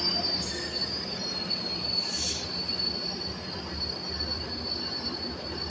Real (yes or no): yes